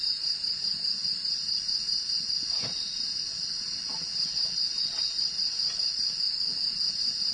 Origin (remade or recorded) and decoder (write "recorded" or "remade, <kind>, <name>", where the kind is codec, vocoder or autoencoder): recorded